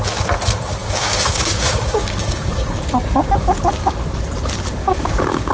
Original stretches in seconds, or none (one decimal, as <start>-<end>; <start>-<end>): 0.0-0.8; 2.5-4.8